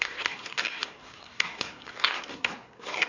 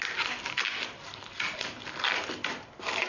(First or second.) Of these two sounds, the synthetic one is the first